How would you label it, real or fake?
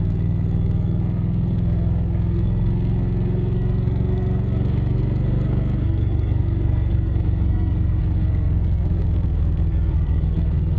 fake